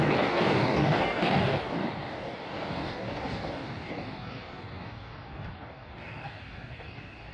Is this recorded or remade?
remade